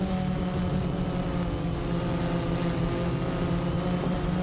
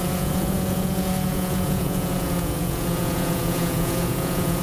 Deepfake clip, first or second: second